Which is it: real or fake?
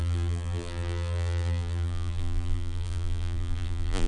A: fake